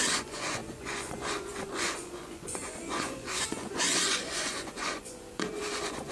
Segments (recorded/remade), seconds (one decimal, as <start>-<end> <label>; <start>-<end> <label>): 0.0-6.1 remade